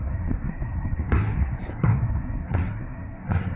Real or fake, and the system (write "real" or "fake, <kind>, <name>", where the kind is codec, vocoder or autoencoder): fake, codec, SNAC